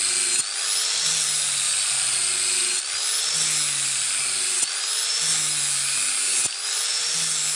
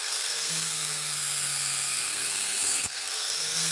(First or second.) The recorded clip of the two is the first